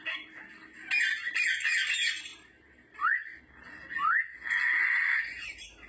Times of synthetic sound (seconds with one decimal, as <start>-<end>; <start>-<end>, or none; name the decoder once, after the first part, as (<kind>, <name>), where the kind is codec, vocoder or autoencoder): 2.3-3.4 (vocoder, BigVGAN v2); 4.9-5.5